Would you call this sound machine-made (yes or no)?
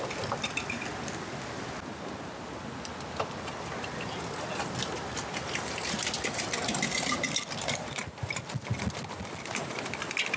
no